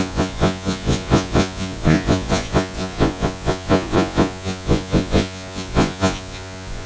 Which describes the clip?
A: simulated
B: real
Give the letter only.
A